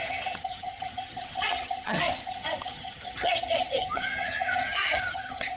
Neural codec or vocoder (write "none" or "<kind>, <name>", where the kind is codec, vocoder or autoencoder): vocoder, HiFi-GAN